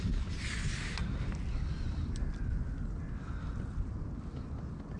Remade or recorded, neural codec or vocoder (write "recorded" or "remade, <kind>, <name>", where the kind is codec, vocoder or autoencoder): recorded